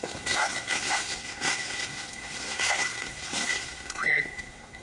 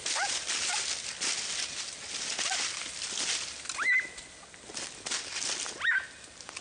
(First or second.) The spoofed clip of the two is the first